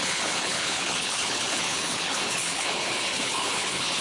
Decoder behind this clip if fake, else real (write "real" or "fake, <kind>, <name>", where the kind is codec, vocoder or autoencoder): fake, codec, HILCodec